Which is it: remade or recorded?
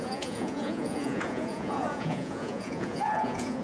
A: remade